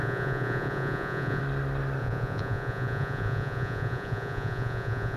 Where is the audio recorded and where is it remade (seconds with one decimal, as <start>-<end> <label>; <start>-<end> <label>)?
0.0-1.4 remade; 1.4-2.0 recorded; 2.0-5.2 remade